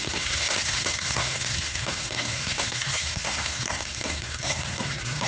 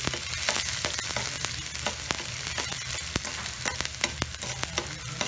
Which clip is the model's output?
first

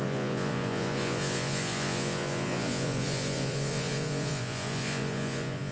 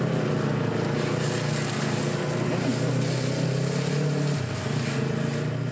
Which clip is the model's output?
first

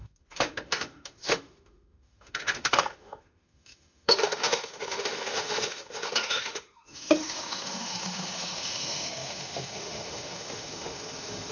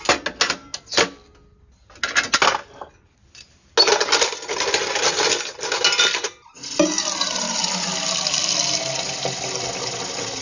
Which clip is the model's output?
first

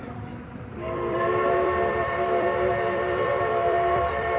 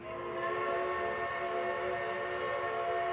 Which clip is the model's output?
first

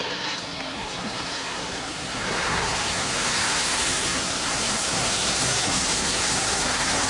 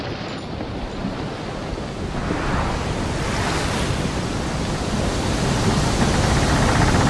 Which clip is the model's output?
first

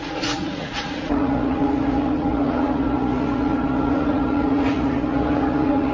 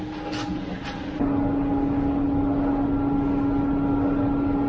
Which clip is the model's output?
first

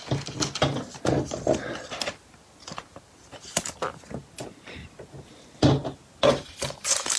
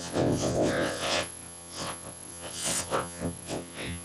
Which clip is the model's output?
second